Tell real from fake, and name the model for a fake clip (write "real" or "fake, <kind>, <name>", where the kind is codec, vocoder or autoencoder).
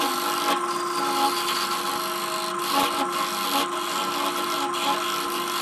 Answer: real